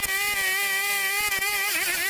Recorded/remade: recorded